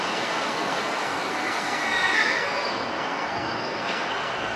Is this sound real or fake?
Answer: fake